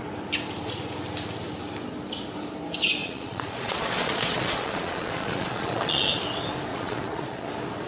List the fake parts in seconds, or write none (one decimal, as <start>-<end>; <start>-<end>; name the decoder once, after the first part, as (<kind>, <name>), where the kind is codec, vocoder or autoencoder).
3.0-6.1 (vocoder, Vocos); 6.7-7.5